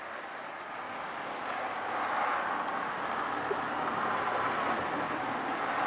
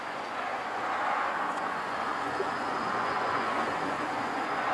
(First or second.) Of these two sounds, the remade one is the second